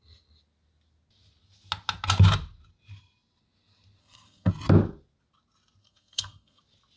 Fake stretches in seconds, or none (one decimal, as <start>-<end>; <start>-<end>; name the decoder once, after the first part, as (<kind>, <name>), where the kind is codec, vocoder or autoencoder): 4.0-4.5 (codec, SNAC); 5.8-6.6